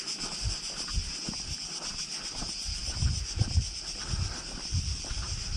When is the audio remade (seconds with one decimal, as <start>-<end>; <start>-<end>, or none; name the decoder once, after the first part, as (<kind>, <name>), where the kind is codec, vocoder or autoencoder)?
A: none